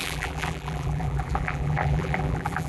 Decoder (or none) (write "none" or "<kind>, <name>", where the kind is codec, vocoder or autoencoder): vocoder, BigVGAN v2